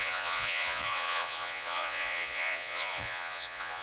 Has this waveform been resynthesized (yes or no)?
yes